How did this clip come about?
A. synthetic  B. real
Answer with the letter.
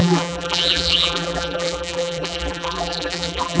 A